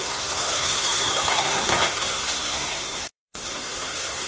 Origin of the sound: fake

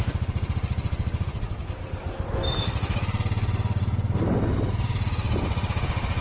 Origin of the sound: real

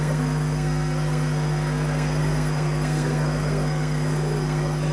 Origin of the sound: fake